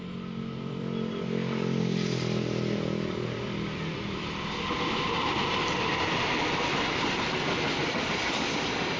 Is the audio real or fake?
fake